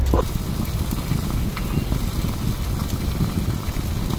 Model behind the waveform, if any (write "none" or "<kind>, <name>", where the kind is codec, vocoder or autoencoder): none